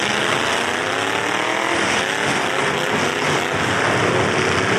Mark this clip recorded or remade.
recorded